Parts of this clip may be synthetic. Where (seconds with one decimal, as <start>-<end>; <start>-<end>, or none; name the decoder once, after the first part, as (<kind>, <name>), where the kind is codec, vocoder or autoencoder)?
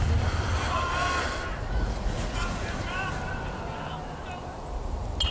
1.5-3.1 (vocoder, Vocos)